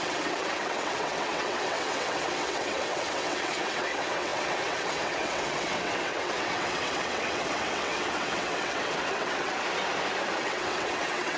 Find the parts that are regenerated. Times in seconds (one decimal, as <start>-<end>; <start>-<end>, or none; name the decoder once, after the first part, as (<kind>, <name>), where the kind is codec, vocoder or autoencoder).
0.0-9.5 (vocoder, WaveNeXt); 10.4-11.4